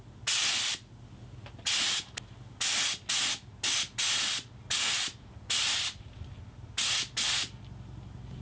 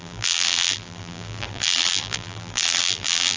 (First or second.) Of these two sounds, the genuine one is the first